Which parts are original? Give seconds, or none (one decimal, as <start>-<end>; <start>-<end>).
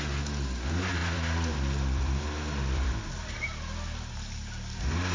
0.0-1.0; 4.1-5.1